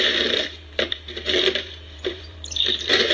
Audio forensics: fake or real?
fake